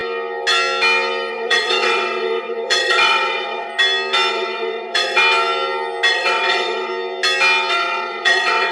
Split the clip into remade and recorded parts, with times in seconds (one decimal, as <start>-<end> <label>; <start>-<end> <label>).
0.0-1.3 recorded; 1.3-3.7 remade; 3.7-4.3 recorded; 4.3-5.2 remade; 5.2-6.1 recorded; 6.1-6.9 remade; 6.9-7.7 recorded; 7.7-8.7 remade